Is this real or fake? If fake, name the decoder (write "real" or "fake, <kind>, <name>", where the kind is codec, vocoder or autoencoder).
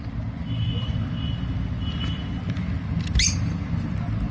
real